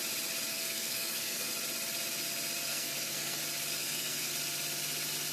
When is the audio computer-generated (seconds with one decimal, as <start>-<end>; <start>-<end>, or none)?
0.5-1.5; 2.7-3.4; 3.8-4.3